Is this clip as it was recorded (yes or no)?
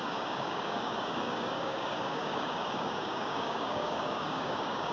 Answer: no